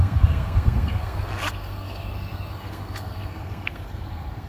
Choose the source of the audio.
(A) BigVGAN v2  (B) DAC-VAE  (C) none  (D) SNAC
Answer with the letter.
D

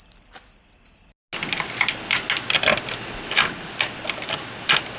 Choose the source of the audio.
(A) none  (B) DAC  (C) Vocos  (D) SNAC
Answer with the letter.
A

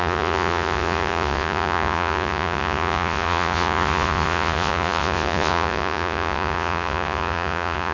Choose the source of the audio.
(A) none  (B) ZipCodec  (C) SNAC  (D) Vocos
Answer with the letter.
D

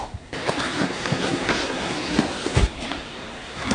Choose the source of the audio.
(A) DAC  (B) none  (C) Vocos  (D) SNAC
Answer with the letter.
D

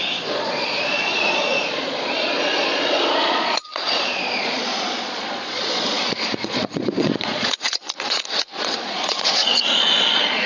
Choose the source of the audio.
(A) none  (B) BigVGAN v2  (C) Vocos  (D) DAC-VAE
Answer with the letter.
C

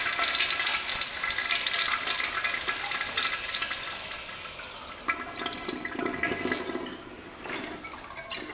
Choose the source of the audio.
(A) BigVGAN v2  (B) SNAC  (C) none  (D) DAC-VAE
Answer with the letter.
C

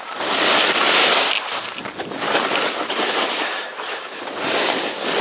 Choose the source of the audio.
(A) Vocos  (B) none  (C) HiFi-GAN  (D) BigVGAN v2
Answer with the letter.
B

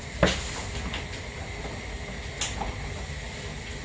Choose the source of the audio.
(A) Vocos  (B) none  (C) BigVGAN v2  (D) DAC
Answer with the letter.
B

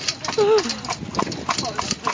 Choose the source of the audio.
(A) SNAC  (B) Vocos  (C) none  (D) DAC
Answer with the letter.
C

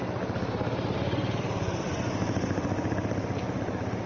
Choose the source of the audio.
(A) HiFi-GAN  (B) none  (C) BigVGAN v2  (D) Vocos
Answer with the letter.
B